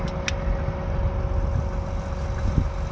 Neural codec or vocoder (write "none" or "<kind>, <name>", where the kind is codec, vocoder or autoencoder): none